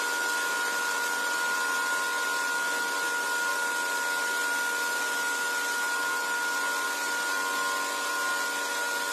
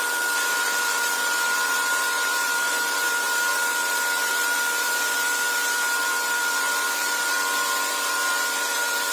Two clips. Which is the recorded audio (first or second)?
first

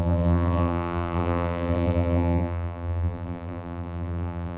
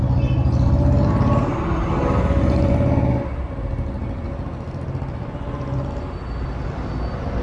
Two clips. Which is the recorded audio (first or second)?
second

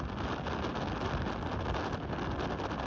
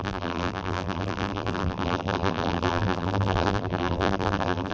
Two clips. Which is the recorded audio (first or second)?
first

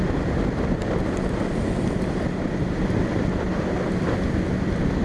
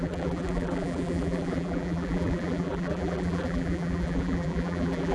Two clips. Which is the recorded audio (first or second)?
first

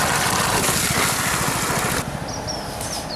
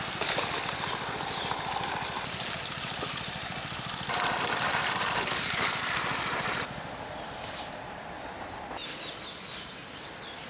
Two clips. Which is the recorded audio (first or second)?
first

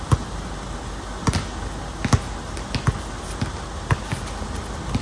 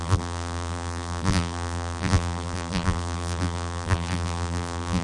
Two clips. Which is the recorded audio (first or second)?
first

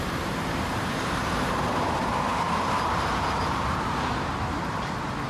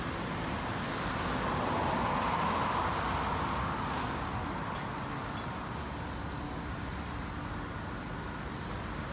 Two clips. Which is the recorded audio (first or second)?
second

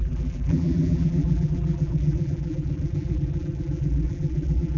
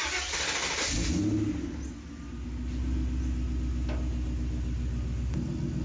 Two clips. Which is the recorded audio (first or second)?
second